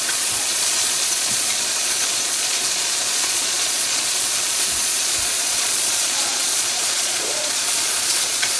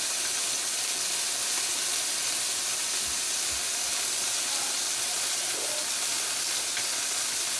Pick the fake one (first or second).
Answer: first